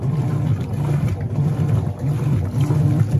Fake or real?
real